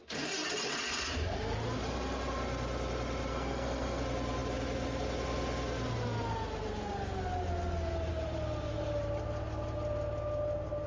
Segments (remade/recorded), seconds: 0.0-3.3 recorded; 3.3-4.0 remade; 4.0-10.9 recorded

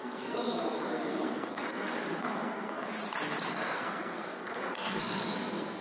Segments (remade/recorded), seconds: 0.0-2.9 remade; 2.9-3.5 recorded; 3.5-5.8 remade

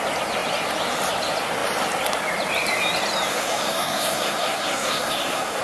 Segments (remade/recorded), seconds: 0.0-3.3 recorded; 3.3-5.6 remade